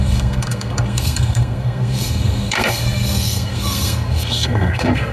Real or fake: fake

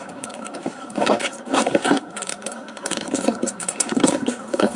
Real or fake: fake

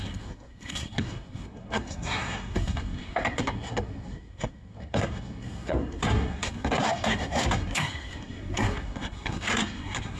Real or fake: fake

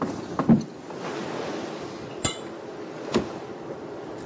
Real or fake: real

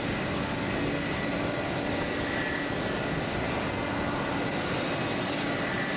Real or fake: real